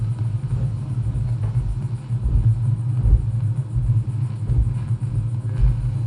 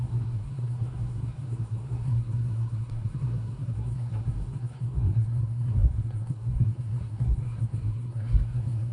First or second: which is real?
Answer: first